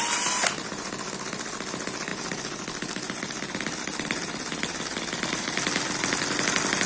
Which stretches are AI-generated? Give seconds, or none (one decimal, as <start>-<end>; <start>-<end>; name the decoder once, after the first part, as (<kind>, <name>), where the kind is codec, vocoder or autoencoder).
none